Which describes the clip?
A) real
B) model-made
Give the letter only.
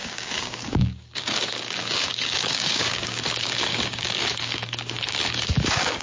B